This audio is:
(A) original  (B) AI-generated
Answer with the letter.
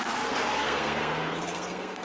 B